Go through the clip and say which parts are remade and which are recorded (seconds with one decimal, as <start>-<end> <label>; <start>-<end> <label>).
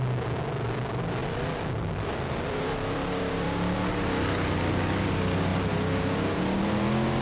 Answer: 0.0-1.2 recorded; 1.2-3.9 remade; 3.9-7.2 recorded